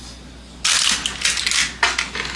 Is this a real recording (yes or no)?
yes